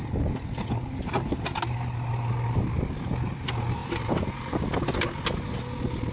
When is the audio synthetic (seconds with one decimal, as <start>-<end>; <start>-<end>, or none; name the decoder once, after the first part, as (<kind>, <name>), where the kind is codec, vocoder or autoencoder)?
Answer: none